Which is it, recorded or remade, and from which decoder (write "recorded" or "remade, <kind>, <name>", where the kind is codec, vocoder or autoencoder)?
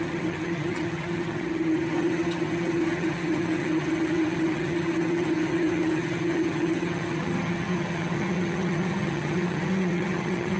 remade, vocoder, HiFi-GAN